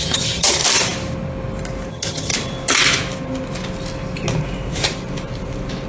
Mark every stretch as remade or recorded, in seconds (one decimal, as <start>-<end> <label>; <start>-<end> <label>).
0.0-0.6 remade; 0.6-1.9 recorded; 1.9-2.3 remade; 2.3-5.9 recorded